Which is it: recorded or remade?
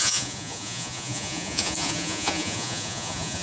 remade